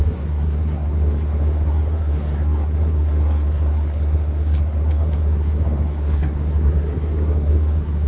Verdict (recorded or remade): remade